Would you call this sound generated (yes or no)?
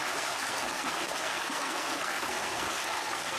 yes